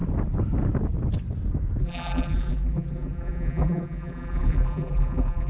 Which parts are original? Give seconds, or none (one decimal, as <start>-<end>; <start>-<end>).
0.0-1.8